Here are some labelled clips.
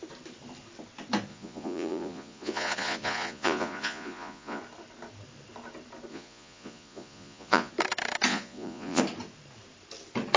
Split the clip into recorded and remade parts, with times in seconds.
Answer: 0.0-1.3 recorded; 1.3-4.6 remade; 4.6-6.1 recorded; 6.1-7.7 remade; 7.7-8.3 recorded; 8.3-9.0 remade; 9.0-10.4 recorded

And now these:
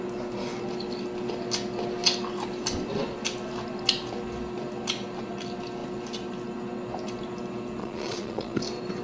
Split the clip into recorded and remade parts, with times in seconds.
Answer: 0.0-7.8 recorded; 7.8-8.6 remade; 8.6-9.0 recorded

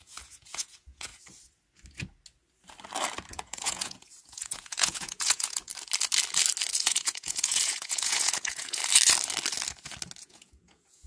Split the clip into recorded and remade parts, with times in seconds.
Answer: 0.0-1.1 remade; 1.1-3.3 recorded; 3.3-5.7 remade; 5.7-6.7 recorded; 6.7-8.8 remade; 8.8-10.2 recorded; 10.2-11.1 remade

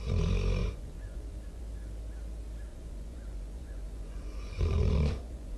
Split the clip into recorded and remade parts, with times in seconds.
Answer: 0.0-0.6 recorded; 0.6-1.6 remade; 1.6-2.7 recorded; 2.7-5.6 remade